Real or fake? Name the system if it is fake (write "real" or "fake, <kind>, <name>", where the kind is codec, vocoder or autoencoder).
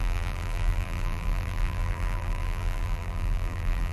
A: fake, vocoder, BigVGAN v2